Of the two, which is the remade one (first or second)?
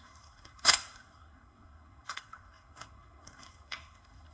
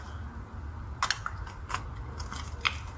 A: first